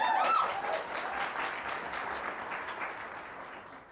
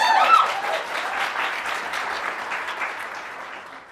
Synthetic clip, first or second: second